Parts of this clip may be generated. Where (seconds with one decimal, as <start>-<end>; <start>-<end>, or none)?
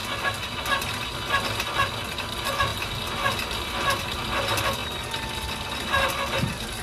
1.3-6.8